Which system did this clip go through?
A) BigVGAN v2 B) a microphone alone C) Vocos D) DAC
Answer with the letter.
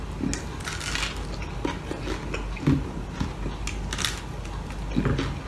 B